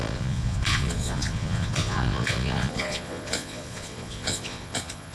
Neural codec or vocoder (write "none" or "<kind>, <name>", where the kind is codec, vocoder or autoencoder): vocoder, Vocos